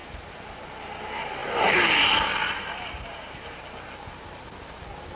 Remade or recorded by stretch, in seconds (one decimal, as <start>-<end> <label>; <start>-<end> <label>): 0.0-0.5 remade; 0.5-1.4 recorded; 1.4-3.6 remade; 3.6-5.2 recorded